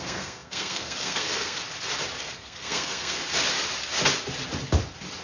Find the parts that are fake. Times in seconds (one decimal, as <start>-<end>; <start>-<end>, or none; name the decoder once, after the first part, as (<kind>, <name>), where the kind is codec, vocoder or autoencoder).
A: 0.0-1.6 (codec, SNAC); 2.2-3.2